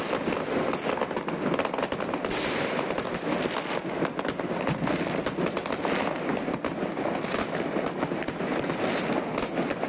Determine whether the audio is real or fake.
real